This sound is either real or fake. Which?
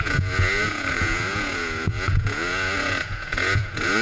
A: fake